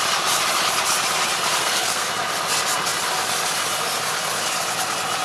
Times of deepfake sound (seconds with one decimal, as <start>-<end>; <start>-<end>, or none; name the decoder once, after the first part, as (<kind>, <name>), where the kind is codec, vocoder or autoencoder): 1.6-2.1 (codec, SNAC)